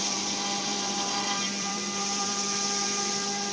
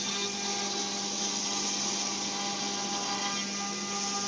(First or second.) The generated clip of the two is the first